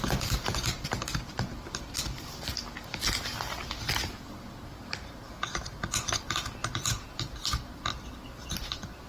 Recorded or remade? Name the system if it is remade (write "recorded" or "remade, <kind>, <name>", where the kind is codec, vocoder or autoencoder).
recorded